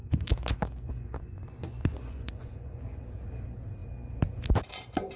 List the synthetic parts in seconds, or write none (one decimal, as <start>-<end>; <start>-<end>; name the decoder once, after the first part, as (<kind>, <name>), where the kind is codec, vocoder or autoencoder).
0.0-3.0 (vocoder, Vocos)